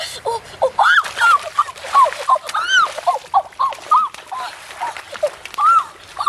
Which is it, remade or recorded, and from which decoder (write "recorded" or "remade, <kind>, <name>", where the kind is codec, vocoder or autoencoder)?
recorded